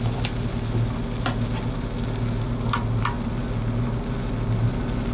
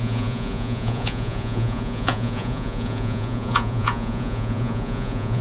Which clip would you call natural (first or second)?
first